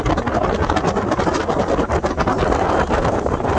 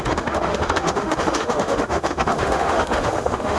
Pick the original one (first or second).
first